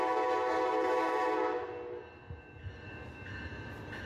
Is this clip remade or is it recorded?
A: recorded